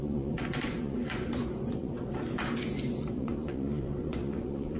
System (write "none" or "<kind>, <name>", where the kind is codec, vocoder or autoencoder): vocoder, Vocos